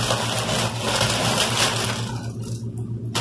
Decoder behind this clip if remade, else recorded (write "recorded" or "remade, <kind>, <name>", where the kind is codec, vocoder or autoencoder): recorded